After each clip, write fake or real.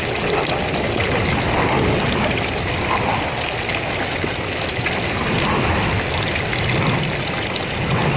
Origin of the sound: real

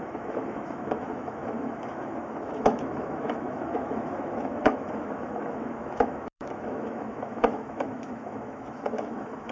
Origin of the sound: fake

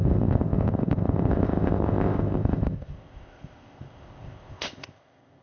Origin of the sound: fake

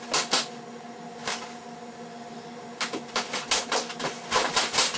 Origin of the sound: real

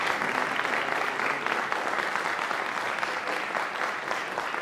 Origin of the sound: real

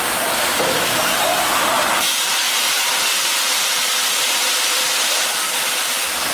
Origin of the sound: real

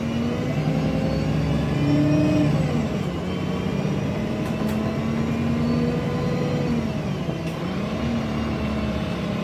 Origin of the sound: real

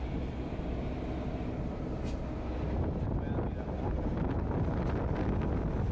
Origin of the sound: real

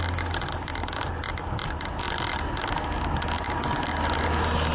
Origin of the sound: real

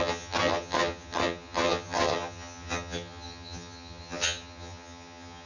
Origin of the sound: fake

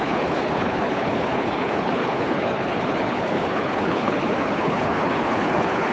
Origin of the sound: fake